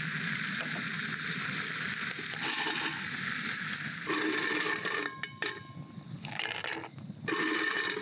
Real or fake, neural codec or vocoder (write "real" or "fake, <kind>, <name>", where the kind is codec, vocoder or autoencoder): real